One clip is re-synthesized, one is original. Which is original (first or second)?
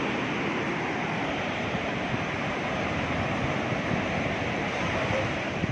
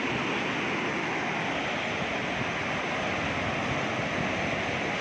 second